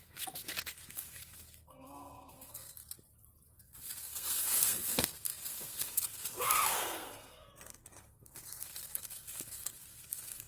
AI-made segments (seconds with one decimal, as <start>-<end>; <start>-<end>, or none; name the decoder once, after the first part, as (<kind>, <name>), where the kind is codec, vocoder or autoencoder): 0.0-2.8 (codec, SNAC); 3.5-10.5